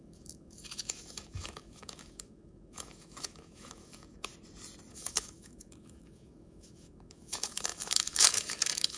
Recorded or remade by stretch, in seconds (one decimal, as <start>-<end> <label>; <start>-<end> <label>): 0.0-4.3 remade; 4.3-4.9 recorded; 4.9-9.0 remade